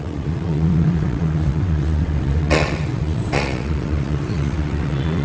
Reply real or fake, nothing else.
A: fake